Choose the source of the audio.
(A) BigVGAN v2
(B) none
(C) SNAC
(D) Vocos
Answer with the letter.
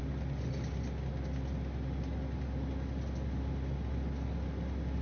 B